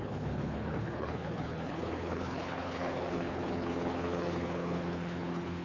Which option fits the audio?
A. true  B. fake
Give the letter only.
B